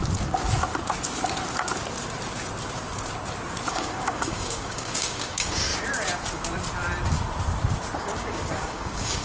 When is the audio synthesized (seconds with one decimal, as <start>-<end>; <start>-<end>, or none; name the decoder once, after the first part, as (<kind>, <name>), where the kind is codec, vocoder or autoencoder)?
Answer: 3.7-5.7 (codec, DAC); 8.0-9.2